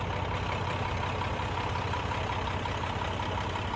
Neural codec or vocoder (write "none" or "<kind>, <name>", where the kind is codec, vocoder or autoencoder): none